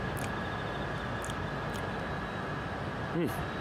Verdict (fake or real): real